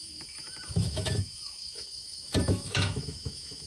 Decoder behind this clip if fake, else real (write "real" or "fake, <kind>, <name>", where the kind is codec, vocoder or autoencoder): fake, autoencoder, DAC-VAE